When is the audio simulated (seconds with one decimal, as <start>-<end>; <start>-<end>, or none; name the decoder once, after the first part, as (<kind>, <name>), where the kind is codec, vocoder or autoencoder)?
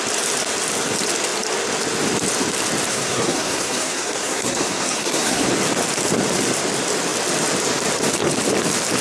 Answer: 2.9-5.5 (codec, SNAC)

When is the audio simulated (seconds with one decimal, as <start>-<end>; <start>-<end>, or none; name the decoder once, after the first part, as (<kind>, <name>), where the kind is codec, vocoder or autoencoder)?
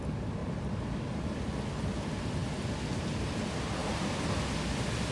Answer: 3.8-4.4 (vocoder, BigVGAN v2)